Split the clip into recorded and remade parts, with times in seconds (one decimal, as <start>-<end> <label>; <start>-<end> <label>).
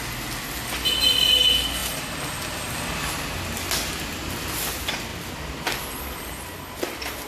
0.0-5.1 recorded; 5.1-6.3 remade; 6.3-7.3 recorded